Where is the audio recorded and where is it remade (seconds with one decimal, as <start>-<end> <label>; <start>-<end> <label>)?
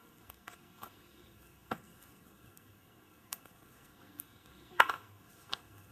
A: 0.0-5.9 remade